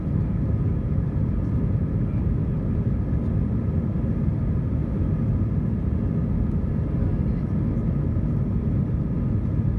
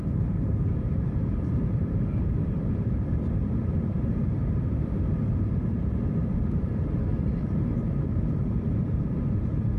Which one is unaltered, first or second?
first